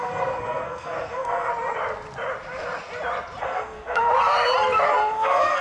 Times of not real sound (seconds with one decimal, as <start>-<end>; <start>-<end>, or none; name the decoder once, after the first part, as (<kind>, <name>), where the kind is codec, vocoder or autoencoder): 0.0-1.5 (codec, SNAC); 3.4-4.1; 4.9-5.6